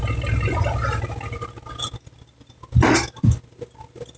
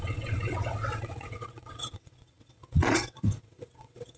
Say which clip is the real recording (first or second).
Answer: first